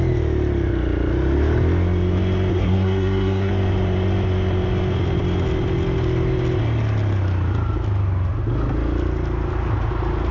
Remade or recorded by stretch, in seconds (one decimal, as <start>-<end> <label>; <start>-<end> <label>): 0.0-2.5 recorded; 2.5-3.5 remade; 3.5-10.3 recorded